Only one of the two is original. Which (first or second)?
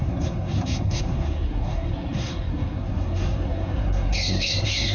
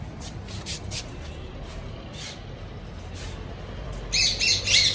second